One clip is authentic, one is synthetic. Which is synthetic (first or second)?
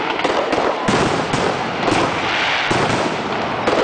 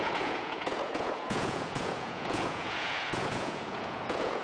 second